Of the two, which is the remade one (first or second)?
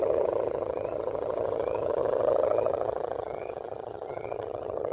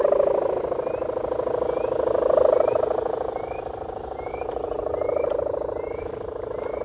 first